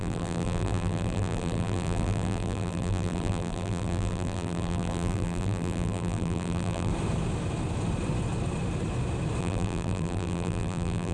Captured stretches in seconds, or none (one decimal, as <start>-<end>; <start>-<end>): 6.9-9.4